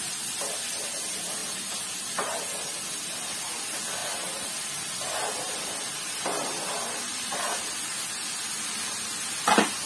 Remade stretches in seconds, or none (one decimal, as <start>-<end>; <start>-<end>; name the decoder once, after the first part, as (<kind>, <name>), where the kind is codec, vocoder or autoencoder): 1.4-2.4 (vocoder, BigVGAN v2); 4.0-7.4